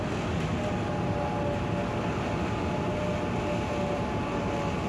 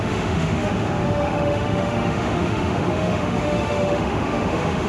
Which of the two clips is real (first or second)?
first